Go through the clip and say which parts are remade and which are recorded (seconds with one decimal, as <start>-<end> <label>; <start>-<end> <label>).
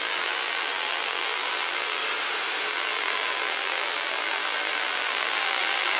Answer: 0.0-2.0 remade; 2.0-2.7 recorded; 2.7-6.0 remade